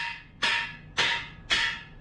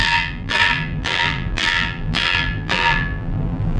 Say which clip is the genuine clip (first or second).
first